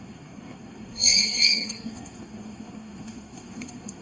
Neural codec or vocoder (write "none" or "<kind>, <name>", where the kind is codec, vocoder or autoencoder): codec, SNAC